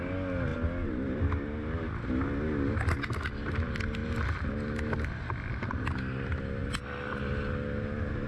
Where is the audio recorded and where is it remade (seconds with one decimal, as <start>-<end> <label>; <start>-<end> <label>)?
0.0-8.3 recorded